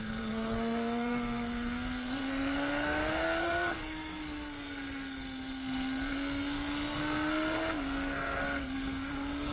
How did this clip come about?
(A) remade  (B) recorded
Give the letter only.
A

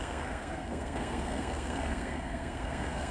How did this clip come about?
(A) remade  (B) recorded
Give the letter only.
A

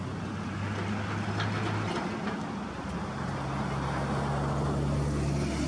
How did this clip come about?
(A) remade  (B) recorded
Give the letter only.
B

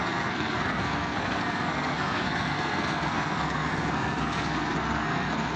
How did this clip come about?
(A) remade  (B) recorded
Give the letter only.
A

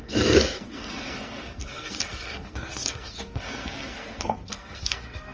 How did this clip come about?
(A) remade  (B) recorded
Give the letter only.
A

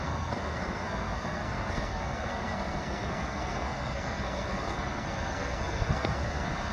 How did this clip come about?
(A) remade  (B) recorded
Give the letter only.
A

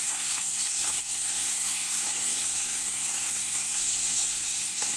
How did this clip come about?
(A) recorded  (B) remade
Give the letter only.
B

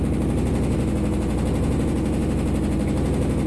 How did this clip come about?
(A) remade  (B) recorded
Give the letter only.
B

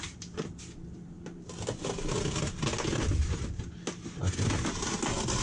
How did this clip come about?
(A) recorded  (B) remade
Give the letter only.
A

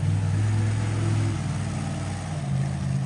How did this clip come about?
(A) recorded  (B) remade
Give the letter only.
A